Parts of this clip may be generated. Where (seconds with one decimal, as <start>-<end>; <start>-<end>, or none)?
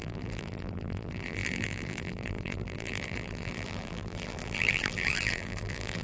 0.0-6.0